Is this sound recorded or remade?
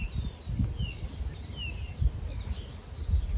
recorded